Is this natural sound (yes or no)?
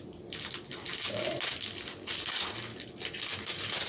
yes